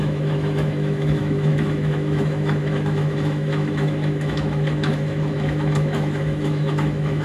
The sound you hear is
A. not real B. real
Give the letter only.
A